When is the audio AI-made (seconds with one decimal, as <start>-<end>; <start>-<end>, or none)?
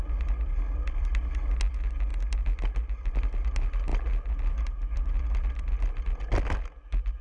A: none